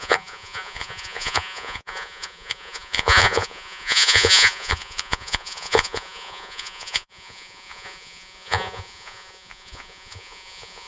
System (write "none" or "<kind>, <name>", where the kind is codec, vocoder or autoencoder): vocoder, Vocos